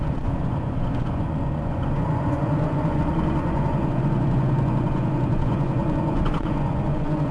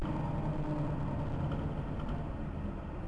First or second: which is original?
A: second